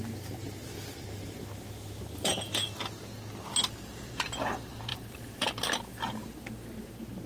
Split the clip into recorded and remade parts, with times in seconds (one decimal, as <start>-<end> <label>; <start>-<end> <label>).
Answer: 0.0-4.9 recorded; 4.9-5.5 remade; 5.5-7.3 recorded